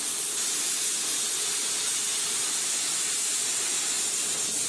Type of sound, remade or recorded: recorded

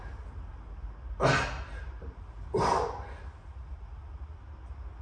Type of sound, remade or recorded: recorded